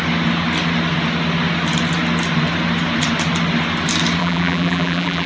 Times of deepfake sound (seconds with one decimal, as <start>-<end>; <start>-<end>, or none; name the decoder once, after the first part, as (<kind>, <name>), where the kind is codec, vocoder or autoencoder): 4.2-5.3 (vocoder, BigVGAN v2)